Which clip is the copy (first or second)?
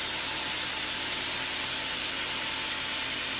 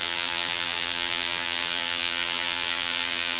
second